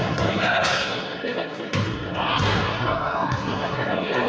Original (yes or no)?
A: no